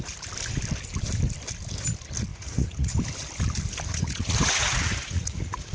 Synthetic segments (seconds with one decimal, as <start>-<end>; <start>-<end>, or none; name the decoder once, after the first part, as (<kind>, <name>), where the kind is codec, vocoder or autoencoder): 2.3-2.9 (vocoder, Vocos); 3.9-5.7